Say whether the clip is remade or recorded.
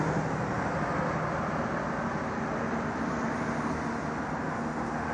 recorded